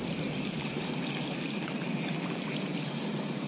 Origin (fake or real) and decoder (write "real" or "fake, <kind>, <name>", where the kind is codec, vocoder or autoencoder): real